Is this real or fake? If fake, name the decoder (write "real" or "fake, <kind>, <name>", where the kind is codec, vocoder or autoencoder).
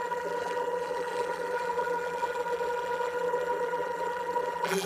fake, vocoder, BigVGAN v2